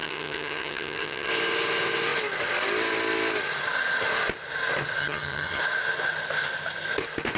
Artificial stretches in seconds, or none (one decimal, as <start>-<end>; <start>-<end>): 0.0-1.3; 5.0-5.6